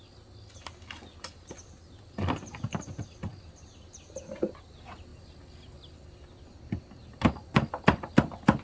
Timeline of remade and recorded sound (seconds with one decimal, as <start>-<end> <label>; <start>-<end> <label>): 0.0-8.6 recorded